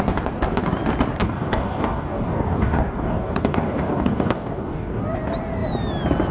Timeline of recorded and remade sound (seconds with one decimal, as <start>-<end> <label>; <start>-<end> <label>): 0.0-1.2 recorded; 1.2-5.0 remade; 5.0-6.3 recorded